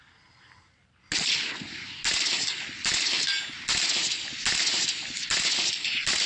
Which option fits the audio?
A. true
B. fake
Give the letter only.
A